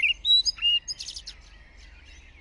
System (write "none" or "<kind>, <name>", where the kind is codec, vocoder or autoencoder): none